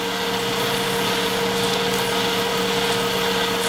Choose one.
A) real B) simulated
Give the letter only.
A